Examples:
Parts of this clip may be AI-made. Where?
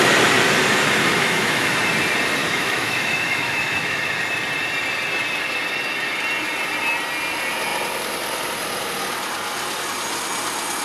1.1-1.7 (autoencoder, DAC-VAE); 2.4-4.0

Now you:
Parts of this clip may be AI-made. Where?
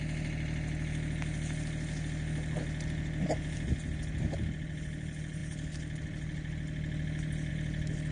none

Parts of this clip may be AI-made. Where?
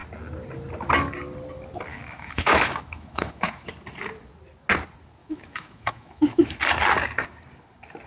1.9-3.7 (autoencoder, DAC-VAE); 5.2-6.6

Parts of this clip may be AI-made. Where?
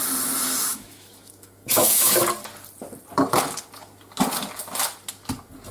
0.7-2.2 (autoencoder, DAC-VAE)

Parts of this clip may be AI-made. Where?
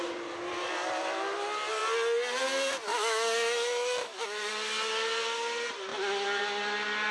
2.9-4.5 (autoencoder, DAC-VAE)